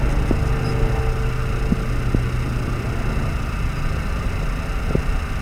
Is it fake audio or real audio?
real